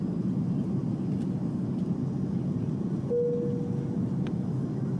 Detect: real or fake real